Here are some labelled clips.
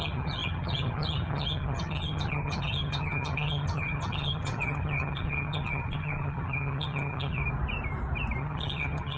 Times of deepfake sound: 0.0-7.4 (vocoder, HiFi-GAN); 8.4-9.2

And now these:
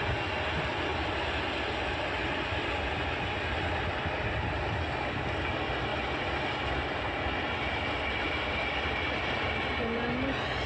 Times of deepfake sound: none

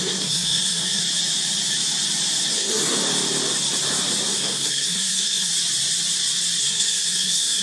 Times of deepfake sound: 0.0-1.0 (codec, SNAC); 2.5-3.0; 4.3-5.5; 6.6-7.6